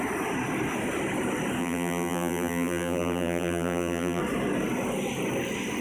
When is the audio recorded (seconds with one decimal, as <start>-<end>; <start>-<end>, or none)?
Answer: 0.0-1.6; 4.2-5.8